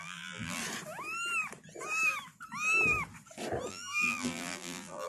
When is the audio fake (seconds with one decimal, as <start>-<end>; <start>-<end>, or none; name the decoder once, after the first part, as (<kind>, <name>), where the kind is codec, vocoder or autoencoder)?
0.0-0.6 (vocoder, BigVGAN v2); 3.7-5.1